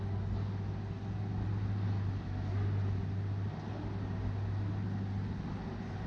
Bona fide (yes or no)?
yes